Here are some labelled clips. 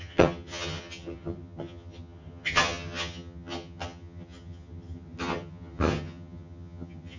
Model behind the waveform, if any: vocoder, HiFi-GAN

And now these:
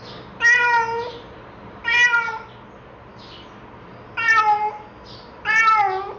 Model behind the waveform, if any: none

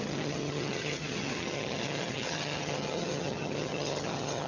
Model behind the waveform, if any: vocoder, HiFi-GAN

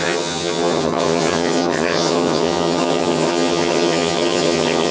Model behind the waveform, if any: vocoder, HiFi-GAN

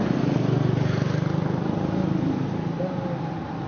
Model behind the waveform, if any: none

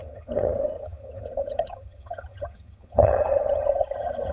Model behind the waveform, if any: vocoder, HiFi-GAN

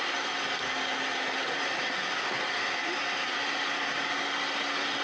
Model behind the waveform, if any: none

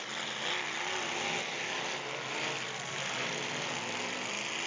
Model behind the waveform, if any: none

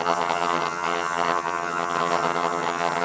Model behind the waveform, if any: vocoder, HiFi-GAN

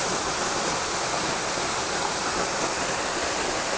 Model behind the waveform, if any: none